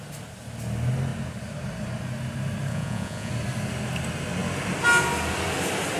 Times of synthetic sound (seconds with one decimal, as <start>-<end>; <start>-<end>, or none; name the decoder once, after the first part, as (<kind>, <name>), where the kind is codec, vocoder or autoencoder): 2.7-3.3 (vocoder, Vocos)